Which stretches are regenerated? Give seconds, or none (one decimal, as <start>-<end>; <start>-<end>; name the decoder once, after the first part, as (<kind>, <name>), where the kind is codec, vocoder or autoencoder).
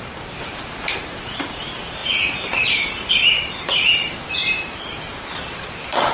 0.0-6.1 (vocoder, BigVGAN v2)